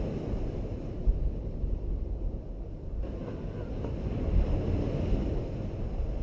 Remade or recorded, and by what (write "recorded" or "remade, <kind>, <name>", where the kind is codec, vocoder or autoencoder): recorded